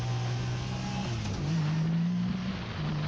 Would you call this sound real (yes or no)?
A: yes